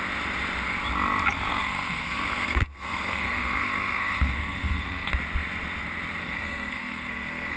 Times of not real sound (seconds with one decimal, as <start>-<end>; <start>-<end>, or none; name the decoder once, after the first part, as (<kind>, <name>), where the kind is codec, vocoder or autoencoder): 1.5-5.1 (codec, SNAC); 6.2-7.6